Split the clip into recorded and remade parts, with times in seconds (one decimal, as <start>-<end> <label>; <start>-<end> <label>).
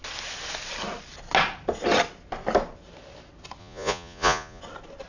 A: 0.0-3.6 recorded; 3.6-4.6 remade; 4.6-5.1 recorded